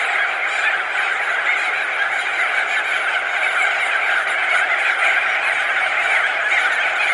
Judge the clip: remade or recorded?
recorded